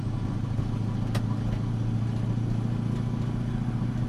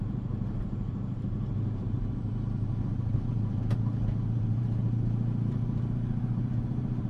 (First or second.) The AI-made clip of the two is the second